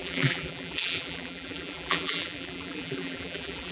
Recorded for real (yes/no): no